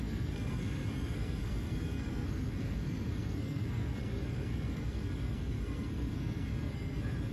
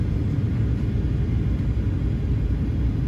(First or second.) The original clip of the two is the second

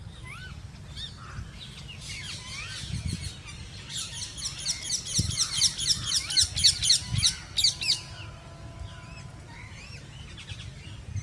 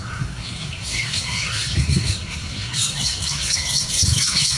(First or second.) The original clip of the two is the first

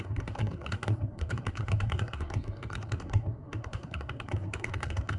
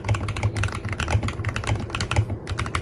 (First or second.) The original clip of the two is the second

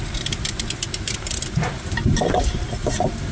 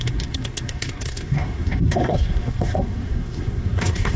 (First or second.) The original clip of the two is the first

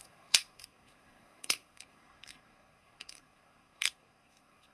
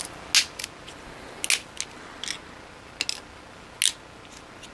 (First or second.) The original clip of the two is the second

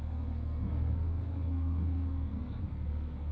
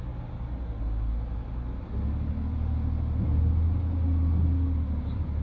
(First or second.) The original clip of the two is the second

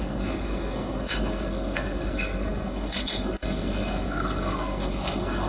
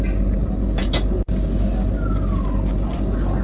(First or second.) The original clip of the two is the second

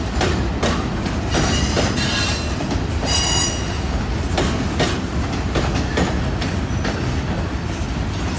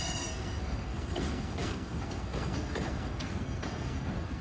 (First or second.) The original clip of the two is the first